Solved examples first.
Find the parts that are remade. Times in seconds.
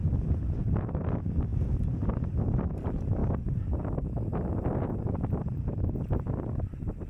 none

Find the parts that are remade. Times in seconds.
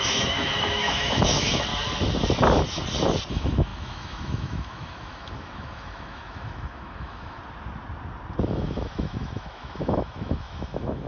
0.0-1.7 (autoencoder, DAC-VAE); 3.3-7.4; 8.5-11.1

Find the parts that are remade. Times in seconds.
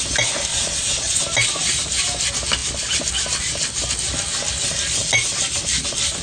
0.5-1.2 (vocoder, Vocos)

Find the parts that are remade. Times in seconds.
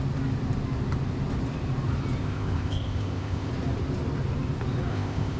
2.2-3.5 (codec, ZipCodec); 4.9-5.4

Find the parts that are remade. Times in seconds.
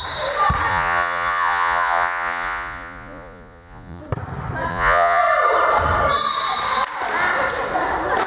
0.7-4.0 (vocoder, Vocos); 4.7-5.2